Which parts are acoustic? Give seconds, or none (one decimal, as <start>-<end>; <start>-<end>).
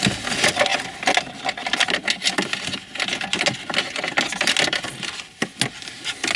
0.0-6.4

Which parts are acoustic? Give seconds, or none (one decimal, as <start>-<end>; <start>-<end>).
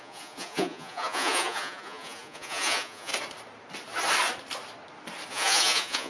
3.1-5.3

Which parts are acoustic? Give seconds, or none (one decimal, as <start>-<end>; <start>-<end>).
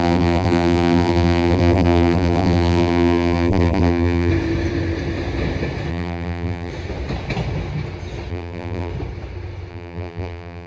4.3-5.9; 6.7-8.3; 8.9-9.7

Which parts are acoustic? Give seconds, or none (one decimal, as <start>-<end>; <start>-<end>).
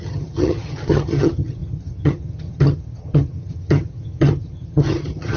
none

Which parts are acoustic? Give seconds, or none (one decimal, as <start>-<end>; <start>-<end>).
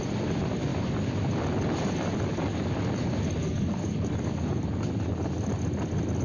0.0-3.4; 4.7-6.2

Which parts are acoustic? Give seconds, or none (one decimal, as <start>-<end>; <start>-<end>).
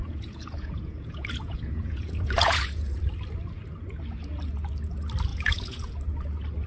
3.0-5.3; 5.9-6.7